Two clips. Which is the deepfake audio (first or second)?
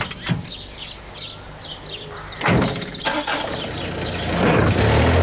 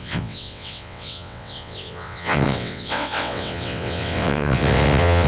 second